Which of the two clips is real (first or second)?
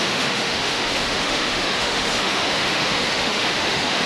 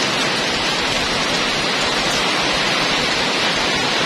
second